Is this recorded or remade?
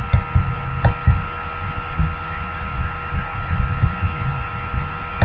recorded